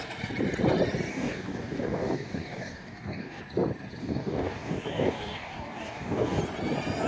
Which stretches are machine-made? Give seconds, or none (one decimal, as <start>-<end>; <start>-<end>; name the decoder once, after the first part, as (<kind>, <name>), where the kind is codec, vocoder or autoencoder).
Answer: 1.1-3.4 (codec, DAC); 4.0-6.4